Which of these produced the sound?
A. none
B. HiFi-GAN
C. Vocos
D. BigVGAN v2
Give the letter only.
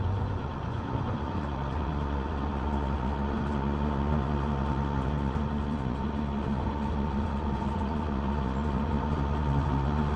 C